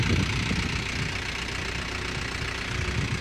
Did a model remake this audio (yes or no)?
no